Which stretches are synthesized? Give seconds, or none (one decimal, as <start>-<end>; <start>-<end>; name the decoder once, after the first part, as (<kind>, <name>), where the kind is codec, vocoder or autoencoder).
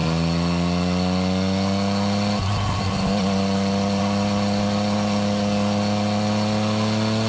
none